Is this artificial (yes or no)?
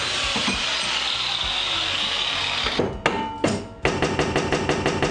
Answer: no